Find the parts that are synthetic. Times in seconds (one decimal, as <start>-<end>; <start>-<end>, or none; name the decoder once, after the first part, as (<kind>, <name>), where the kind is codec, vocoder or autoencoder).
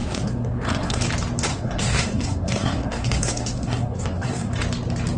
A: 0.0-1.0 (codec, SNAC); 1.5-4.5